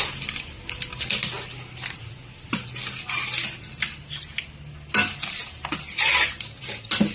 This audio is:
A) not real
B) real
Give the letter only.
B